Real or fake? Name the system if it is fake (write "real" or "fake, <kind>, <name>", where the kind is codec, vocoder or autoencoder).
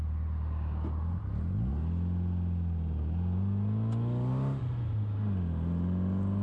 real